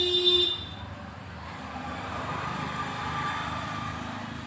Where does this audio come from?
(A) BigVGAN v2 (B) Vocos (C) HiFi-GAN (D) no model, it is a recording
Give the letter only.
D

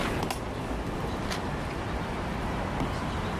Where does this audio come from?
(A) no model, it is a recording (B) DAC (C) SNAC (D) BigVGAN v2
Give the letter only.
A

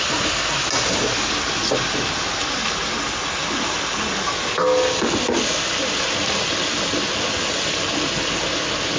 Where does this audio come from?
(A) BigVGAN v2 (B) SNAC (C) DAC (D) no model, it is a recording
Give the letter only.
D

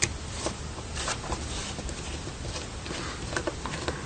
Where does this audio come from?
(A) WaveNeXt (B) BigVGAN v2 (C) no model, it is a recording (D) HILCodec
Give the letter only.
C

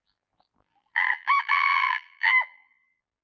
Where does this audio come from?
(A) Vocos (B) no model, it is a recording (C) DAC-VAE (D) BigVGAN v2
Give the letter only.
D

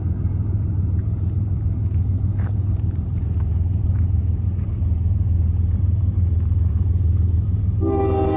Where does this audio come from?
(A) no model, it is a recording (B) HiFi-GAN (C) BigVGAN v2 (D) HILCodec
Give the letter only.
C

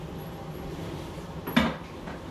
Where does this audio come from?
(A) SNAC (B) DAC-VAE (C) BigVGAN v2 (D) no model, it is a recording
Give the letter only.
D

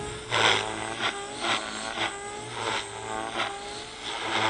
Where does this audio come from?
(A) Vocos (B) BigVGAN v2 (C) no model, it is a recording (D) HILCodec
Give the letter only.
C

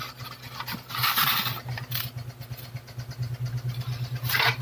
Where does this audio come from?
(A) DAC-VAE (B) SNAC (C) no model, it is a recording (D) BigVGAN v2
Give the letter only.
C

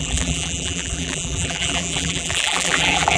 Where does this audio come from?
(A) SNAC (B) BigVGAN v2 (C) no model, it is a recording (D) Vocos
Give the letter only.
B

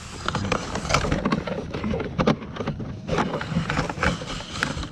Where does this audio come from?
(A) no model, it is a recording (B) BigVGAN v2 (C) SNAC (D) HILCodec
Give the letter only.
A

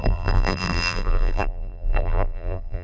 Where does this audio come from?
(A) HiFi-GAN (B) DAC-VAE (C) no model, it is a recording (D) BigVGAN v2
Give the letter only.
D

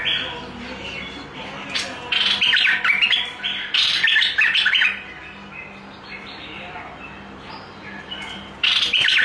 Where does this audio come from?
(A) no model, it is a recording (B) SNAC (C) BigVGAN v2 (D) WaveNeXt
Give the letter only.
C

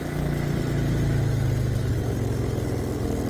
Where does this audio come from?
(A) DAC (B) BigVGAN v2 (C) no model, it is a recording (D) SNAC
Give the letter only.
C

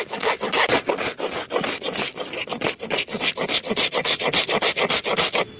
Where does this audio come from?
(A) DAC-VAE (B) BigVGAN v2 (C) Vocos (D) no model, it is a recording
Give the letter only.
D